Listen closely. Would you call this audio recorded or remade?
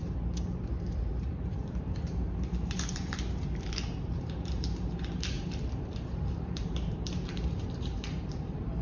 remade